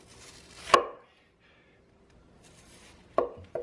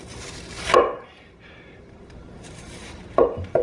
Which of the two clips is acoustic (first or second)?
first